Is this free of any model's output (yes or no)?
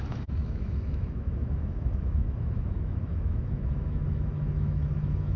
no